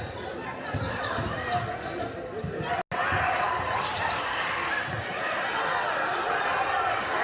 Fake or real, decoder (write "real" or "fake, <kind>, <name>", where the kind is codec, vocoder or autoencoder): real